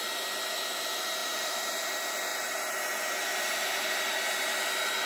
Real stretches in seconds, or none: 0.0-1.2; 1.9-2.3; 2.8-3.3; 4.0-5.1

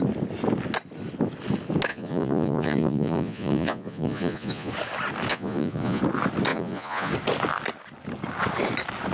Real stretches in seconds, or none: 0.0-1.9; 4.7-5.3; 6.0-6.5; 7.1-9.1